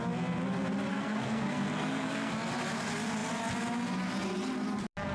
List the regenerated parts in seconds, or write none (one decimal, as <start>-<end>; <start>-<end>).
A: 0.9-2.3